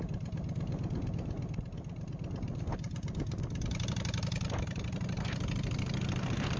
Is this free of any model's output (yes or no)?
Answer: yes